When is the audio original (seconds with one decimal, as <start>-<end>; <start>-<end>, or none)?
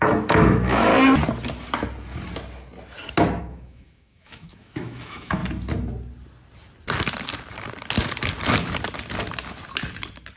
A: 0.9-3.4; 5.4-10.4